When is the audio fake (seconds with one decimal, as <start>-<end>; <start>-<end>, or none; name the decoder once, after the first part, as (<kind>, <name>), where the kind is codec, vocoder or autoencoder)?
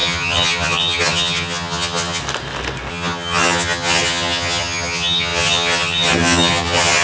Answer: 0.0-2.2 (vocoder, HiFi-GAN); 2.9-7.0